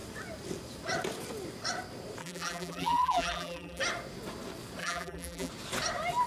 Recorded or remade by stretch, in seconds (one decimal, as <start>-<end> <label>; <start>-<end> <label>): 0.0-2.2 recorded; 2.2-3.8 remade; 3.8-4.8 recorded; 4.8-5.5 remade; 5.5-6.3 recorded